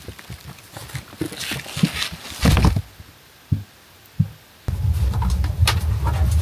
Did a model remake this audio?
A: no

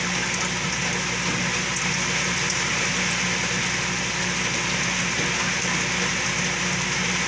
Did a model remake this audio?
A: no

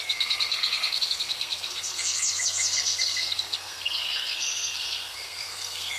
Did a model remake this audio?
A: yes